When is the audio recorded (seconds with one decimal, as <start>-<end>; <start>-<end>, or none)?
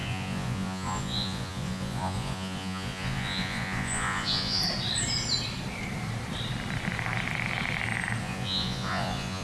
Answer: 4.6-8.2